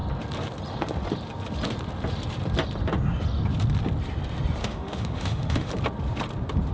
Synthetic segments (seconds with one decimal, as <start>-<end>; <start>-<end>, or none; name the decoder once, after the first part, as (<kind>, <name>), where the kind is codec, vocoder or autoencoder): 4.6-5.7 (autoencoder, DAC-VAE)